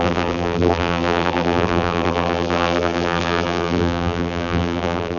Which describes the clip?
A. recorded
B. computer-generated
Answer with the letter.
B